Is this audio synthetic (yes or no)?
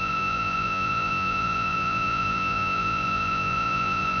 yes